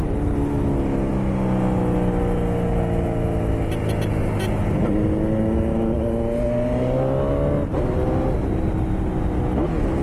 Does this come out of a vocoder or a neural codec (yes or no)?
no